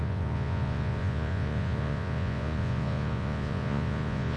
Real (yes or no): no